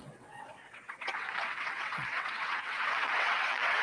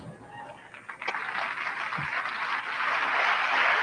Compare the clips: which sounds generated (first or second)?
first